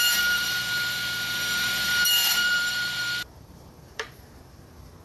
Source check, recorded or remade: remade